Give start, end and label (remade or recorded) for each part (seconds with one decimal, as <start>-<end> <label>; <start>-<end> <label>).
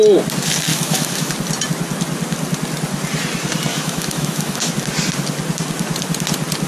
0.0-0.7 recorded; 0.7-1.3 remade; 1.3-3.7 recorded; 3.7-4.7 remade; 4.7-6.7 recorded